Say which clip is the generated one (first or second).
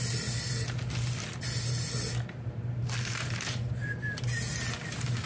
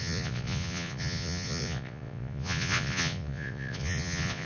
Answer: second